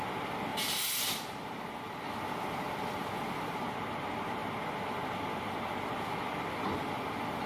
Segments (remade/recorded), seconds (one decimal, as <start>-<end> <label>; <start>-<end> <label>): 0.0-0.5 recorded; 0.5-1.7 remade; 1.7-7.5 recorded